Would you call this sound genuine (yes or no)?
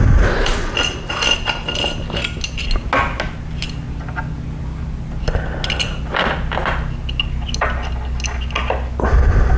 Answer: yes